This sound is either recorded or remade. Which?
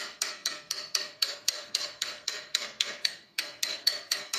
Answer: remade